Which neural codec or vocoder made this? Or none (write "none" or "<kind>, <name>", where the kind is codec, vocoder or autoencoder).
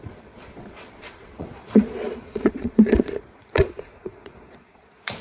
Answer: vocoder, Vocos